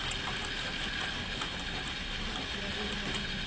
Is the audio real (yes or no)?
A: yes